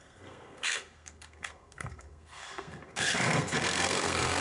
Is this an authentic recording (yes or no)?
no